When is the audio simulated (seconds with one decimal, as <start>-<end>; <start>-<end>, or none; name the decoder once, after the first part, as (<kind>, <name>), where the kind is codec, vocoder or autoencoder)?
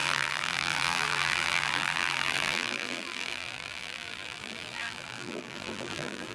0.0-6.3 (vocoder, BigVGAN v2)